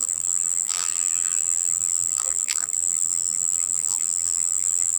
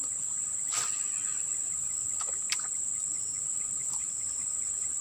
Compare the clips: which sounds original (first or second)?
second